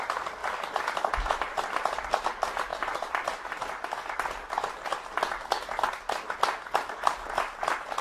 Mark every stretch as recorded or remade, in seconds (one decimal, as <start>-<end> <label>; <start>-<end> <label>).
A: 0.0-8.0 recorded